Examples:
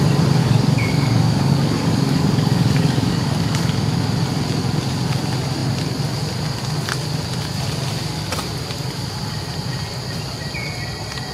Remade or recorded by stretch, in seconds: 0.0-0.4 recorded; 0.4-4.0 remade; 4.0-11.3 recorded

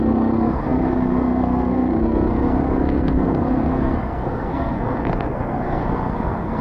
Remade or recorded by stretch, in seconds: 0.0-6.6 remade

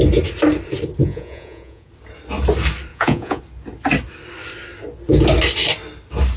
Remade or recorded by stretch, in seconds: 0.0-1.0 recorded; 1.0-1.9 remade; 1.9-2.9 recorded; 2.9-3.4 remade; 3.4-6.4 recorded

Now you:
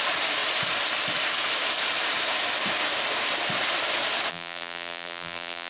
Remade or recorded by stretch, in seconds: 0.0-4.3 recorded; 4.3-5.7 remade

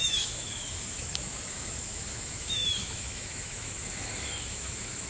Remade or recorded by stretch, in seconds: 0.0-5.1 remade

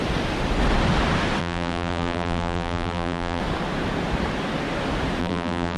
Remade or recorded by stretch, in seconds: 0.0-1.4 recorded; 1.4-3.4 remade; 3.4-5.2 recorded; 5.2-5.8 remade

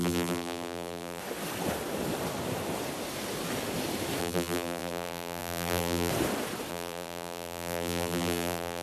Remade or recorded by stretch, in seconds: 0.0-1.2 remade; 1.2-4.2 recorded; 4.2-6.1 remade; 6.1-6.7 recorded; 6.7-8.8 remade

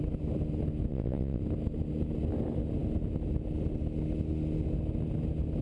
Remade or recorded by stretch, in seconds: 0.0-0.9 recorded; 0.9-1.4 remade; 1.4-5.6 recorded